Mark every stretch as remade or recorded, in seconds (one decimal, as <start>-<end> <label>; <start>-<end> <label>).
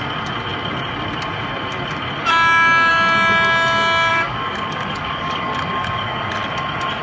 0.0-4.1 recorded; 4.1-6.3 remade; 6.3-7.0 recorded